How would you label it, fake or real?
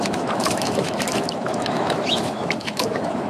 fake